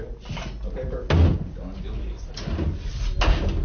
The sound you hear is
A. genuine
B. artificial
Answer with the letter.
A